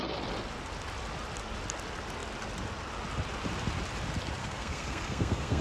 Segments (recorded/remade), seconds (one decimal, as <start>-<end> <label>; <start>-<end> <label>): 0.0-4.4 recorded; 4.4-5.6 remade